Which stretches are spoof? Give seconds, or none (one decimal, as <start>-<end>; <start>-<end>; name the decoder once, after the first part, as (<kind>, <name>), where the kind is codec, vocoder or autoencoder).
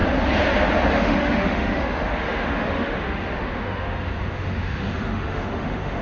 0.9-6.0 (autoencoder, DAC-VAE)